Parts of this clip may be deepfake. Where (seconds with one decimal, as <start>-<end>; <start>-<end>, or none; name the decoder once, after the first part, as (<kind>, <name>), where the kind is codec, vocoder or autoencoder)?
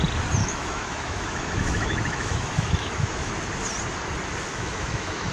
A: 0.4-3.3 (autoencoder, DAC-VAE); 4.5-5.3